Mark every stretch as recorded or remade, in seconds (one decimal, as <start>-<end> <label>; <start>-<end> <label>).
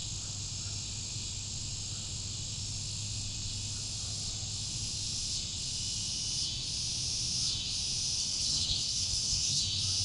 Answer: 0.0-8.2 recorded; 8.2-9.6 remade; 9.6-10.0 recorded